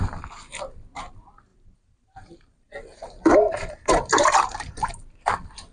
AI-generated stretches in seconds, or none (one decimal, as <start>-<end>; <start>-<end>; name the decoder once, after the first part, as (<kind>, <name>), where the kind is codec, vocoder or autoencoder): 1.5-4.9 (vocoder, BigVGAN v2)